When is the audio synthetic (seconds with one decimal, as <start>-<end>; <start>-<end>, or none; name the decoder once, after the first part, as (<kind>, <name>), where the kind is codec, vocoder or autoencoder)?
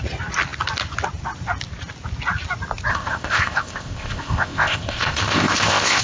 2.9-6.0 (codec, ZipCodec)